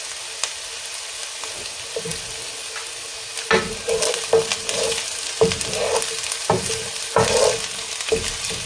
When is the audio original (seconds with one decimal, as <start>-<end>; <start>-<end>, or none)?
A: 0.0-8.7